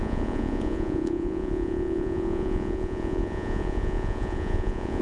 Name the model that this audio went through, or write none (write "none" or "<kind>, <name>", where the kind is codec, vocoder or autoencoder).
vocoder, Vocos